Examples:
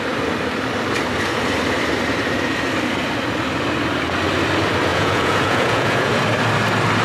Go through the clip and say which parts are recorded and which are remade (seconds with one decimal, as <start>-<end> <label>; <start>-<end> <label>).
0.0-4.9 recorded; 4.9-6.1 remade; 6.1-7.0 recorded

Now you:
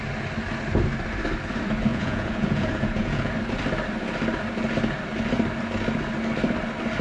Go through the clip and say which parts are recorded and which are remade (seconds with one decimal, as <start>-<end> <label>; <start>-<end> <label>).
0.0-1.9 recorded; 1.9-3.3 remade; 3.3-7.0 recorded

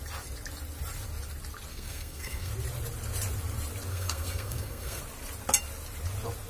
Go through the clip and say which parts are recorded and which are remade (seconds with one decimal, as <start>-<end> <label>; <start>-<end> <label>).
0.0-1.7 recorded; 1.7-2.5 remade; 2.5-3.9 recorded; 3.9-5.0 remade; 5.0-6.5 recorded

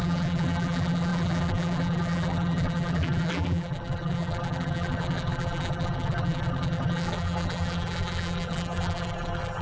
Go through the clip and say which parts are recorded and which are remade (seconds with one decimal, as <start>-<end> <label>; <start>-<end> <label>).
0.0-9.6 remade

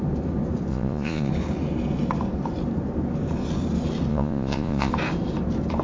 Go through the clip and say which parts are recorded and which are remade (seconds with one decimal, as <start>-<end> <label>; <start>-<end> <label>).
0.0-0.7 recorded; 0.7-1.3 remade; 1.3-4.1 recorded; 4.1-4.9 remade; 4.9-5.8 recorded

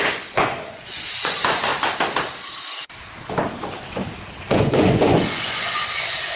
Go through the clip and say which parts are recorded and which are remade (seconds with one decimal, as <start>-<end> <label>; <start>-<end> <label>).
0.0-1.7 remade; 1.7-4.5 recorded; 4.5-6.4 remade

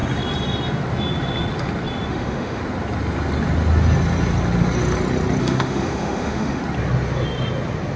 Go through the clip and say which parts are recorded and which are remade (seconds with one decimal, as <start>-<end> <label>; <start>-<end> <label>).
0.0-2.1 recorded; 2.1-2.6 remade; 2.6-5.4 recorded; 5.4-6.6 remade; 6.6-8.0 recorded

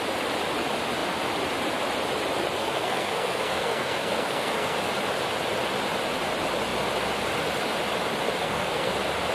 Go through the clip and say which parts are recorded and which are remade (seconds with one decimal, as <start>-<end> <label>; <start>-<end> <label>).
0.0-2.6 recorded; 2.6-4.9 remade; 4.9-8.4 recorded; 8.4-8.9 remade; 8.9-9.3 recorded